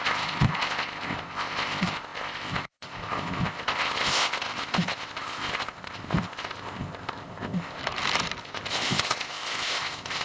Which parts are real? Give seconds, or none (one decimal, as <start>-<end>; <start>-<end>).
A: 7.8-8.4